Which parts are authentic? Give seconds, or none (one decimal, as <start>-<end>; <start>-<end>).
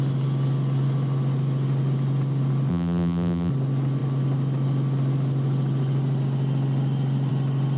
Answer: 0.0-2.7; 3.5-7.8